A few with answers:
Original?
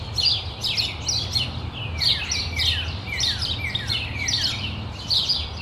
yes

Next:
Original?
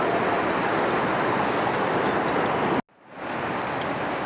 yes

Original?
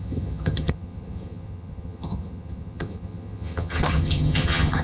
no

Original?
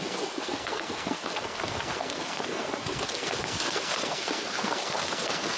no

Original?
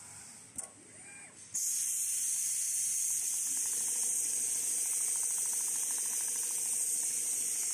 yes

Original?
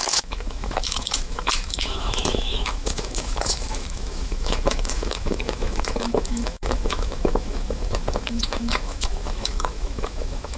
no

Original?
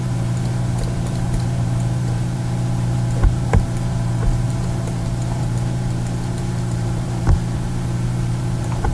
no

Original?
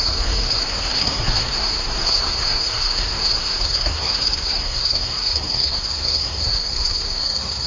no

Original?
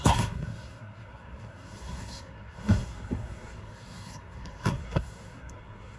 no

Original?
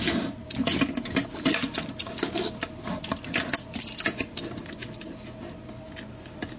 yes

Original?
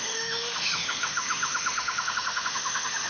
no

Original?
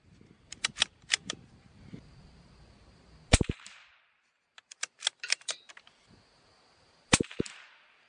no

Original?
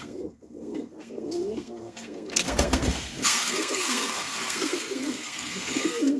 no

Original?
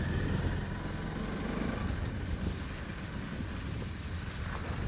yes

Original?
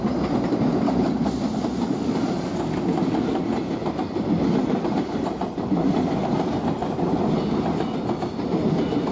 yes